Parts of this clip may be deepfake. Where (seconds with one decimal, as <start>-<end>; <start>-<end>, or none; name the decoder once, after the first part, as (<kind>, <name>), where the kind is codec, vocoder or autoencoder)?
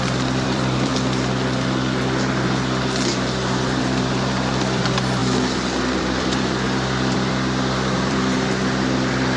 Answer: 0.0-0.9 (vocoder, BigVGAN v2); 3.8-5.2; 6.0-9.4